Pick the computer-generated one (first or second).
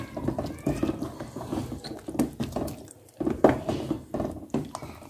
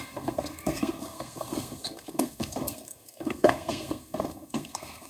second